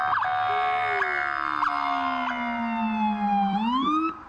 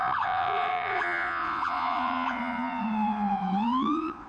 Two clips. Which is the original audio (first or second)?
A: first